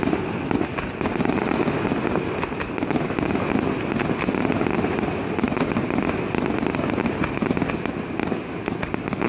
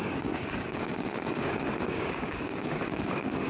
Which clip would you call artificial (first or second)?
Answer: second